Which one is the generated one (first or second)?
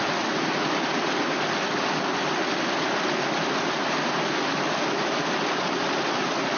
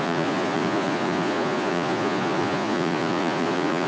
second